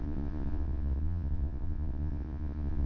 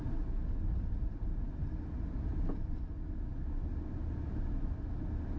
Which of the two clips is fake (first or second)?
first